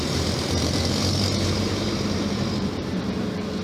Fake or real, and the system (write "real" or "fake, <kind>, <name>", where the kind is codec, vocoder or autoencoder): fake, vocoder, BigVGAN v2